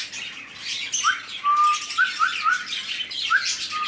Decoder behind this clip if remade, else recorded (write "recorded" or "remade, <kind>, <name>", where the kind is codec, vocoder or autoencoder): recorded